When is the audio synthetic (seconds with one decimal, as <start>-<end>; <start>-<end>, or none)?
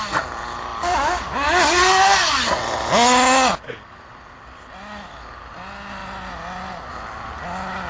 none